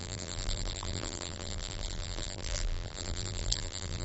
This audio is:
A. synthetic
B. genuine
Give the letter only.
A